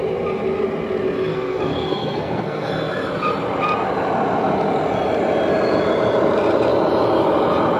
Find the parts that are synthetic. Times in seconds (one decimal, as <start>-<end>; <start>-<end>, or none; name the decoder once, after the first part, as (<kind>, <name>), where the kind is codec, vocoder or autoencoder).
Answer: 1.3-2.7 (codec, SNAC)

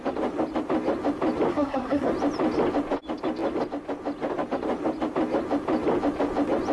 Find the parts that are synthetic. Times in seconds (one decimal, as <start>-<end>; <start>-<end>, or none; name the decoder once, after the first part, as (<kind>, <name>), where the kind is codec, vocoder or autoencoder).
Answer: 1.5-2.1 (codec, SNAC)

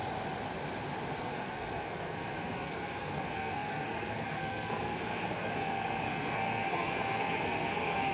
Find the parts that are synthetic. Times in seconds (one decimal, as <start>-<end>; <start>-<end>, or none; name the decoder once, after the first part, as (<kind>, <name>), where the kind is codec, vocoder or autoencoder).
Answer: 1.2-8.1 (codec, SNAC)

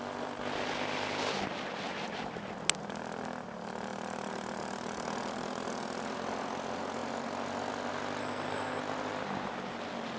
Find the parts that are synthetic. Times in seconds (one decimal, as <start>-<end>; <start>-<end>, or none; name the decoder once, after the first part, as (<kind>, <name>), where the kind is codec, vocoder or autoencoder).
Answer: 8.2-8.8 (codec, SNAC)

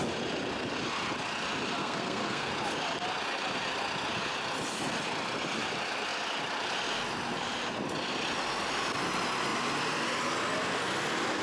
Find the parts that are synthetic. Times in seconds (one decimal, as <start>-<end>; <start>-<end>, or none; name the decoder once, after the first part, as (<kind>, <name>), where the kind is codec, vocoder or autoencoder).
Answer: 1.8-2.5 (codec, SNAC)